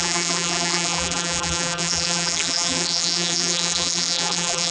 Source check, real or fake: fake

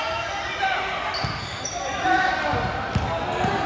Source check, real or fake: real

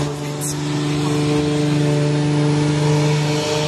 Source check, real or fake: real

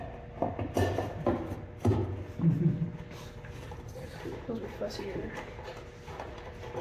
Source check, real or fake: real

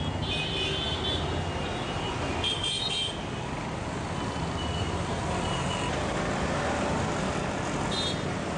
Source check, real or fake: real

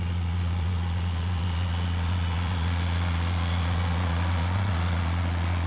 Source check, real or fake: fake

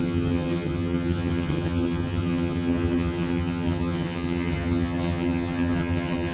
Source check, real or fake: fake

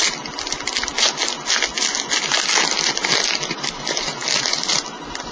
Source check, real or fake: real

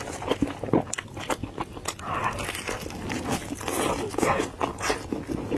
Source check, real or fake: real